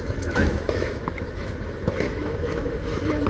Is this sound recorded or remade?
remade